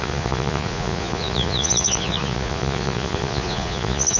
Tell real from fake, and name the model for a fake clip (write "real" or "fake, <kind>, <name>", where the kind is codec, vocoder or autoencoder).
fake, vocoder, Vocos